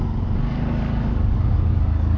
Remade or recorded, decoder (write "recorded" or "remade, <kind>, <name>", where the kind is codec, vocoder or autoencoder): remade, codec, DAC